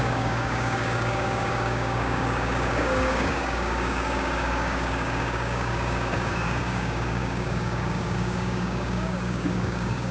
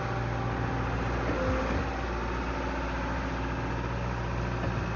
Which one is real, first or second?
second